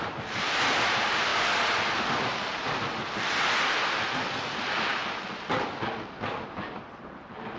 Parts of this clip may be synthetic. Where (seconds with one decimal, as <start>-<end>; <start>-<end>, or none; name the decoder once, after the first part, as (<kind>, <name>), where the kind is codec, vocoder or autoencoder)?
none